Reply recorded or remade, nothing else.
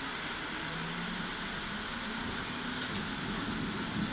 recorded